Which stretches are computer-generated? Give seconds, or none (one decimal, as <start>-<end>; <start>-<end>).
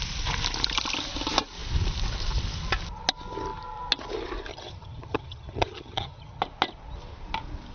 4.5-6.4